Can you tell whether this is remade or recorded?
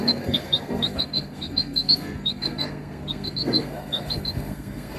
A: remade